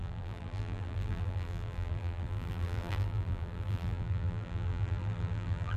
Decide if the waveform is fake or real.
fake